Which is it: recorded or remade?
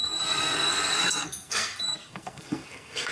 remade